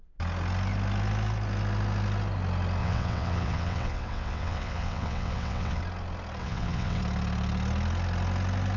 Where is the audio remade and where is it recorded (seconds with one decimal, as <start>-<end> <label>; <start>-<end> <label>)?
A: 0.0-2.8 recorded; 2.8-5.8 remade; 5.8-6.4 recorded; 6.4-7.0 remade; 7.0-8.8 recorded